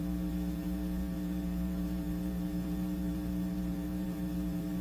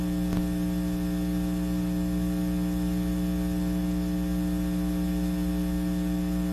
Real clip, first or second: second